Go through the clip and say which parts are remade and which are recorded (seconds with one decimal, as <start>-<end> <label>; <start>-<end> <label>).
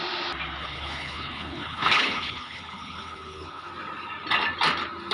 0.0-0.6 recorded; 0.6-3.7 remade; 3.7-5.1 recorded